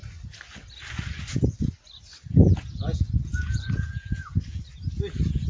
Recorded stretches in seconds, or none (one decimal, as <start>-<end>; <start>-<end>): 0.0-2.4; 4.7-5.5